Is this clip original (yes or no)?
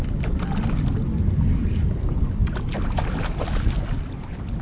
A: yes